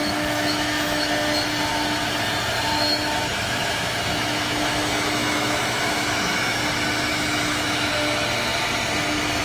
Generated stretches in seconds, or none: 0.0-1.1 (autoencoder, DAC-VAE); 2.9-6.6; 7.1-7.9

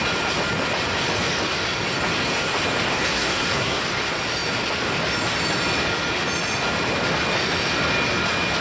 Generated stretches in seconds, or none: 2.9-3.8 (codec, SNAC)